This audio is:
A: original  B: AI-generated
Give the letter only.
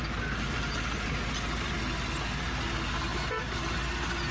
A